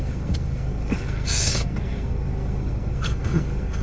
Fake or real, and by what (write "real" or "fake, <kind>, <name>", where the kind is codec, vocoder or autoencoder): fake, codec, SNAC